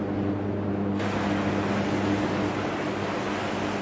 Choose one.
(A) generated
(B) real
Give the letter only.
B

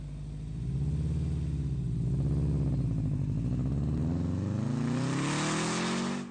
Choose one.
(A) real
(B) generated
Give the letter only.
A